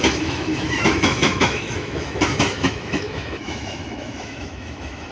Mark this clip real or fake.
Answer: fake